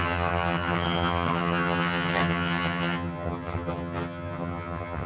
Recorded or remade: remade